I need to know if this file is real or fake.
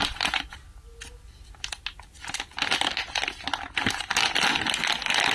real